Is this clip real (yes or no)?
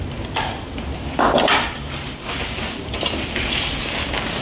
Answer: yes